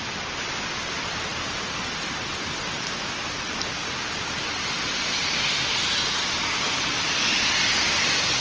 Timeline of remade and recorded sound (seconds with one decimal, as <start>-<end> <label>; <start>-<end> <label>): 0.0-1.3 remade; 1.3-2.3 recorded; 2.3-8.4 remade